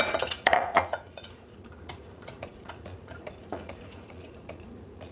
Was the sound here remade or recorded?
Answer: remade